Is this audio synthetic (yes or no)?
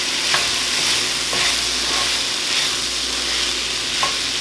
no